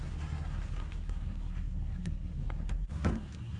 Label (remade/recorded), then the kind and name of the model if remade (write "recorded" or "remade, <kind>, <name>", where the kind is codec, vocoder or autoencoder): remade, codec, SNAC